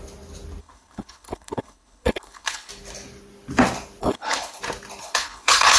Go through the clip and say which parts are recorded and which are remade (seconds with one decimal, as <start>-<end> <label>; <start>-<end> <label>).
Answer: 0.0-0.6 recorded; 0.6-2.7 remade; 2.7-4.0 recorded; 4.0-4.6 remade; 4.6-5.0 recorded; 5.0-5.8 remade